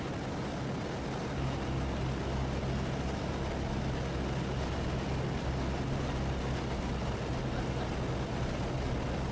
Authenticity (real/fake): real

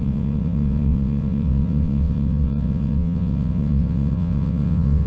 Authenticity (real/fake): fake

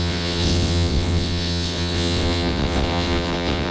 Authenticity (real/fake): fake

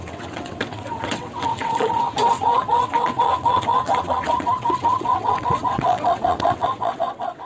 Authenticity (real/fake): fake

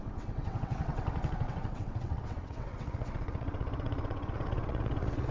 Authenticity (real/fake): fake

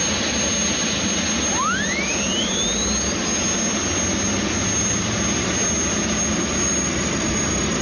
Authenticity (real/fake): real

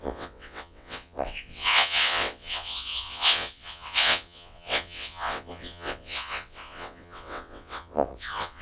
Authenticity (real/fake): fake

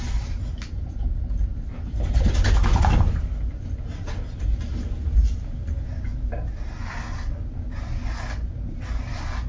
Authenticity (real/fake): real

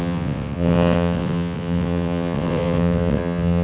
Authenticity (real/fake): fake